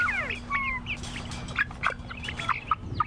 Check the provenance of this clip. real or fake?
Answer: real